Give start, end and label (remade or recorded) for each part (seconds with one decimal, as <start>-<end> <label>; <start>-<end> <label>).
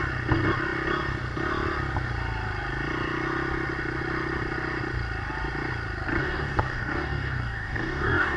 0.0-6.2 recorded; 6.2-8.4 remade